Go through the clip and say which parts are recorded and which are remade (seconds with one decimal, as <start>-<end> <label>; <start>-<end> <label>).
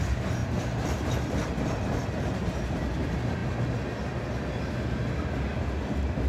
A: 0.0-0.4 recorded; 0.4-1.1 remade; 1.1-6.3 recorded